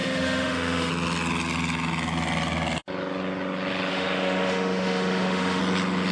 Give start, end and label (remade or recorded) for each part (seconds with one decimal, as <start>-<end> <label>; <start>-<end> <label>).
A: 0.0-0.9 remade; 0.9-3.9 recorded; 3.9-5.6 remade; 5.6-6.1 recorded